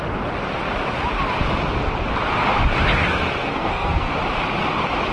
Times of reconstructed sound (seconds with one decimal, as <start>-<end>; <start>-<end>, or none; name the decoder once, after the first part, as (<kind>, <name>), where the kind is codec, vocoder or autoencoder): 3.4-4.1 (codec, SNAC)